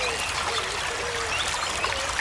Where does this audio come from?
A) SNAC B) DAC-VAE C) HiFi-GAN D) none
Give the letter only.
D